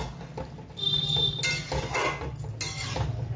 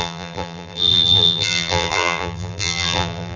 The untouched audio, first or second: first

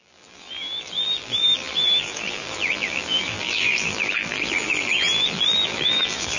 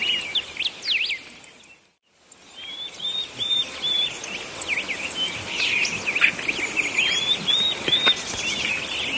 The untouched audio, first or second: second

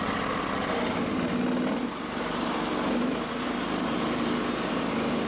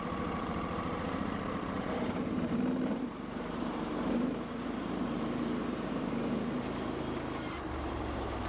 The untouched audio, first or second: first